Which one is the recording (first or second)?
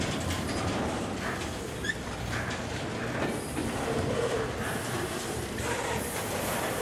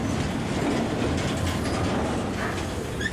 second